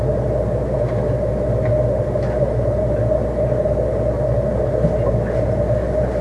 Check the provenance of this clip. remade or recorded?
recorded